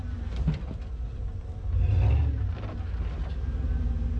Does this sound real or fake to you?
real